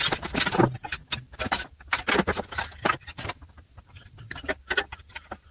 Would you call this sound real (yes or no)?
yes